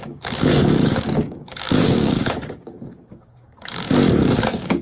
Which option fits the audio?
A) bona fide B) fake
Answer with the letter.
B